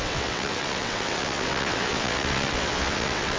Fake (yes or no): yes